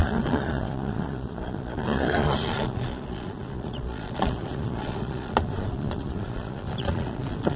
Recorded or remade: remade